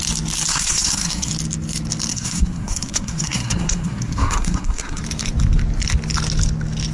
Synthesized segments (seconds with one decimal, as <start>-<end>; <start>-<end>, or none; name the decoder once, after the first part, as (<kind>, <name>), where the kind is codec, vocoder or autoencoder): 0.5-1.3 (codec, SNAC); 2.1-5.0